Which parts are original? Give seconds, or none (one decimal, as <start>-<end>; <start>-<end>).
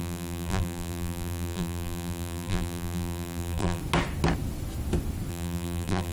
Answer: 3.8-5.3